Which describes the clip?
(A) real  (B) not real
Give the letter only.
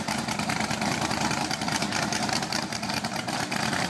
B